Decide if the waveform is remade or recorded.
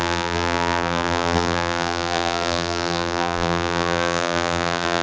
remade